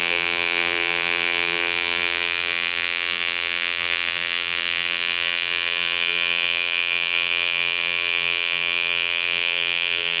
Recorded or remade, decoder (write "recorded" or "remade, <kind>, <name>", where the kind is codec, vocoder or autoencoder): remade, vocoder, BigVGAN v2